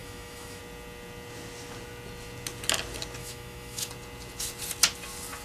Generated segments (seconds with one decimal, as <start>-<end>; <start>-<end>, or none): 0.0-0.6; 3.2-3.9